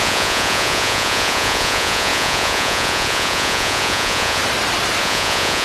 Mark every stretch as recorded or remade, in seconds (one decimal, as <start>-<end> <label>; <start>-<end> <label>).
0.0-4.4 remade; 4.4-5.0 recorded; 5.0-5.6 remade